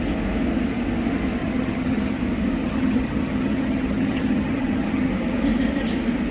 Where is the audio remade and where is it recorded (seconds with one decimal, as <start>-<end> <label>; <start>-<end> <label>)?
0.0-1.4 recorded; 1.4-2.2 remade; 2.2-2.6 recorded; 2.6-5.1 remade; 5.1-6.3 recorded